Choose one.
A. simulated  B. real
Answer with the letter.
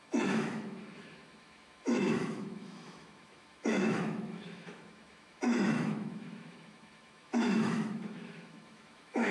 A